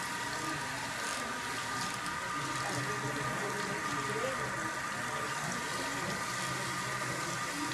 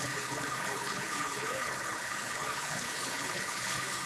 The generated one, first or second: second